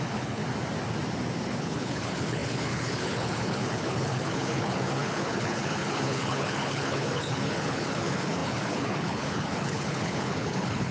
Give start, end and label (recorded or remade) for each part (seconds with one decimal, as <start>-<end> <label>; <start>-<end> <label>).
0.0-0.4 remade; 0.4-1.6 recorded; 1.6-10.9 remade